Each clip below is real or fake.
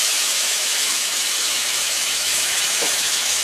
fake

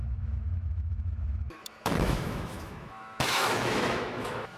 fake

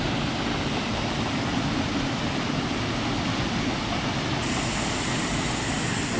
real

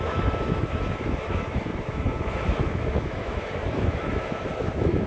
fake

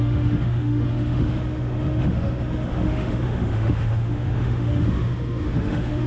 fake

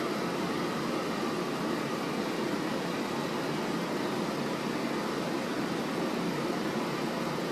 real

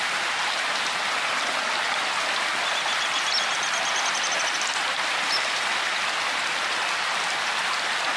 real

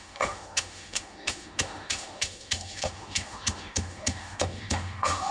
fake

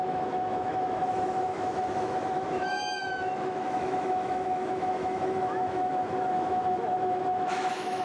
fake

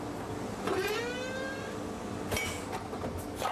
real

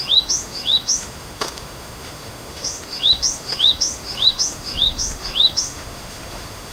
fake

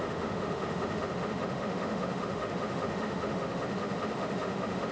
fake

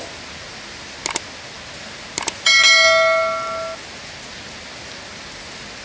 real